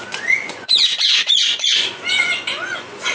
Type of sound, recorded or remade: remade